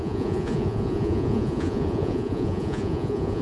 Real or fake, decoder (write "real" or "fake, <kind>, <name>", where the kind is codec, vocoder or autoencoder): fake, vocoder, Vocos